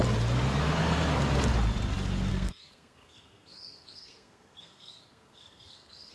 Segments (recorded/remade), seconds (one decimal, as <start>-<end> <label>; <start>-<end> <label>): 0.0-2.3 recorded; 2.3-6.1 remade